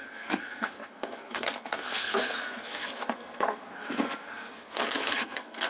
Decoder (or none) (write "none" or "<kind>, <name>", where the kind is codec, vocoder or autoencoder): codec, SNAC